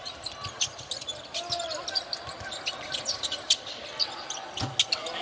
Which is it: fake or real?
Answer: real